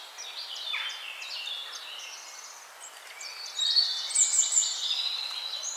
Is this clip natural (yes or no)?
yes